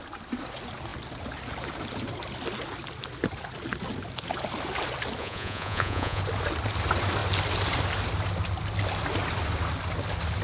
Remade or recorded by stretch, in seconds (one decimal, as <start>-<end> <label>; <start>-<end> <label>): 0.0-5.2 recorded; 5.2-6.2 remade; 6.2-10.4 recorded

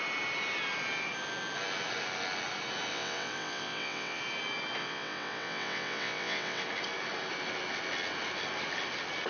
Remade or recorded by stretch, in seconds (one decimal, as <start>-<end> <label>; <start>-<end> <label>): 0.0-2.9 recorded; 2.9-4.2 remade; 4.2-4.8 recorded; 4.8-6.6 remade; 6.6-9.3 recorded